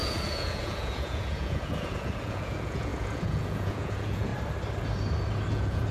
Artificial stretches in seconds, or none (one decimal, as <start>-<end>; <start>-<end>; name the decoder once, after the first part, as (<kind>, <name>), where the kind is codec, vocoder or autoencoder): 0.0-4.3 (vocoder, Vocos); 5.5-5.9